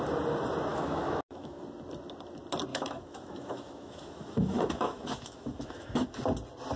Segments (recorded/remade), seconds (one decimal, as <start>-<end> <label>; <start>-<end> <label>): 0.0-0.7 recorded; 0.7-1.6 remade; 1.6-2.7 recorded; 2.7-6.2 remade; 6.2-6.8 recorded